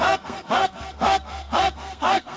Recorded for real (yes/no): no